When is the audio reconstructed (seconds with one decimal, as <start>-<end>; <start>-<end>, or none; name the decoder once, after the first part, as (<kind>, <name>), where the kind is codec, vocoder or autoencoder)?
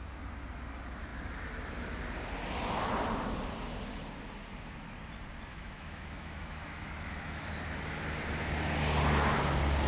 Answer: 5.5-7.5 (autoencoder, DAC-VAE)